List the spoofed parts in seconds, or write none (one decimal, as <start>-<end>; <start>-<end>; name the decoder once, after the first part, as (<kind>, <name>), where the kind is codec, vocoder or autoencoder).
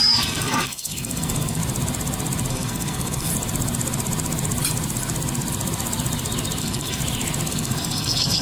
0.0-1.6 (codec, SNAC); 2.5-3.3; 6.6-7.0; 7.5-8.4